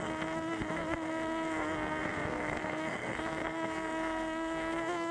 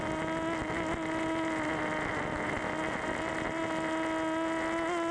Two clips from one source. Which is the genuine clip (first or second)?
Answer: second